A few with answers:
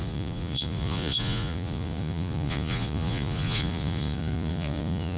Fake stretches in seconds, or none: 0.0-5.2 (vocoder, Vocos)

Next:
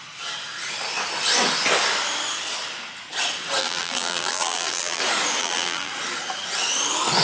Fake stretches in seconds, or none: 3.6-5.0 (vocoder, BigVGAN v2); 5.4-5.9

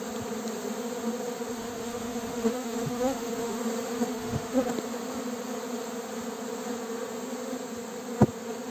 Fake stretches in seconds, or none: 1.5-3.6 (autoencoder, DAC-VAE); 4.1-4.7

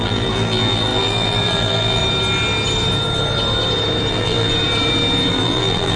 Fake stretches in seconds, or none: 0.0-2.0 (vocoder, BigVGAN v2); 4.1-4.5; 5.3-6.0

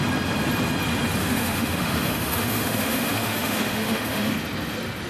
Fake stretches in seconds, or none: 1.2-4.3 (autoencoder, DAC-VAE)

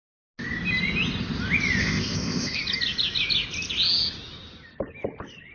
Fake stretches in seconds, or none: 1.8-2.6 (codec, ZipCodec)